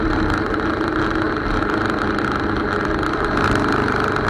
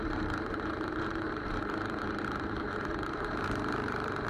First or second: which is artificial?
second